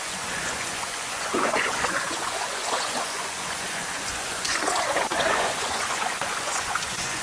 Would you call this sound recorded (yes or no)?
no